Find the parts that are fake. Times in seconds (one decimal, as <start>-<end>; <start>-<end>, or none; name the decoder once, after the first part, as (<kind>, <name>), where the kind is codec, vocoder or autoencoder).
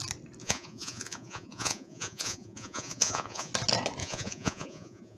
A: 0.4-3.5 (vocoder, Vocos); 4.0-5.2